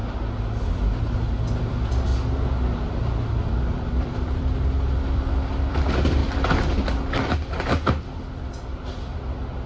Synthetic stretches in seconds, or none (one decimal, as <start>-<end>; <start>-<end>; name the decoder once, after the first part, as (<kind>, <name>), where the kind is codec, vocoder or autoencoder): 1.5-2.1 (vocoder, BigVGAN v2); 2.8-6.2